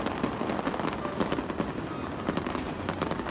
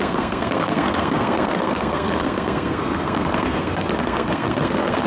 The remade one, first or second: second